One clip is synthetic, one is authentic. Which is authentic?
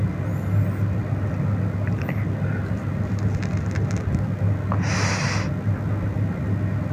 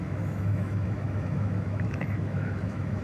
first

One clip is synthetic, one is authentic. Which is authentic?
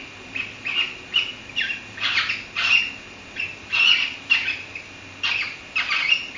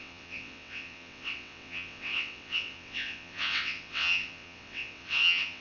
first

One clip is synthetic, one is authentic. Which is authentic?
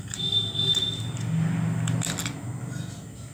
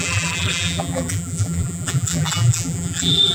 first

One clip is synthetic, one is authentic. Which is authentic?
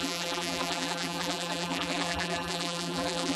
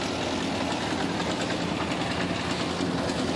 second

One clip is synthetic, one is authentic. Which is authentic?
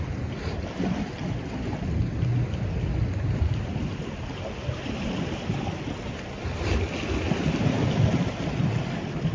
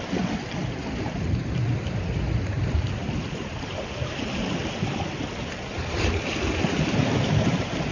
first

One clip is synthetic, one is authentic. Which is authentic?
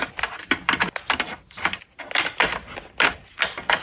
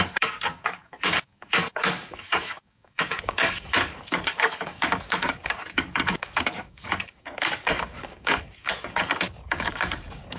first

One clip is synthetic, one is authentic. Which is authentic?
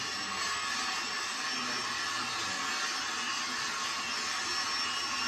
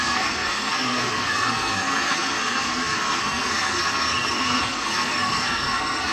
first